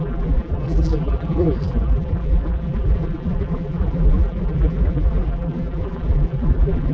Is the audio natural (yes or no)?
no